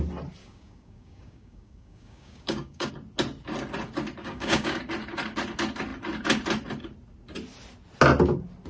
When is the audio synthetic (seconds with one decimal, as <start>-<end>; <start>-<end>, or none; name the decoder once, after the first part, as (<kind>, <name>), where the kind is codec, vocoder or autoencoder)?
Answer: 0.4-2.9 (codec, DAC); 4.2-4.8